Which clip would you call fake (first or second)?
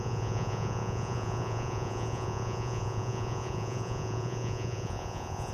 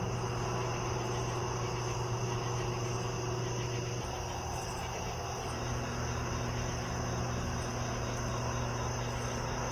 first